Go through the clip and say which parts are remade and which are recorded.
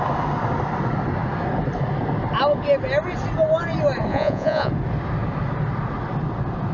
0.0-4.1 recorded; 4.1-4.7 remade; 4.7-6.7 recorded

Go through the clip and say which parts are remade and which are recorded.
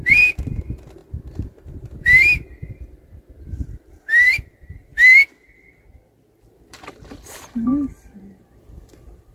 0.0-4.9 remade; 4.9-6.4 recorded; 6.4-7.7 remade; 7.7-8.5 recorded; 8.5-9.3 remade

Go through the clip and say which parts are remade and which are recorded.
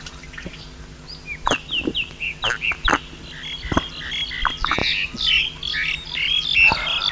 0.0-7.1 recorded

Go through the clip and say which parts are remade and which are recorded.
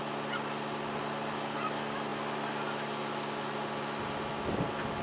0.0-5.0 recorded